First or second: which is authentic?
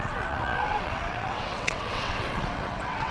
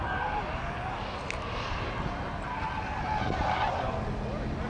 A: second